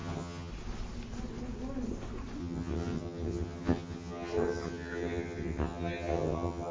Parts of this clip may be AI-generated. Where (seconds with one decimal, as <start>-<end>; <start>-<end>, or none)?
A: 0.0-0.5; 2.4-6.7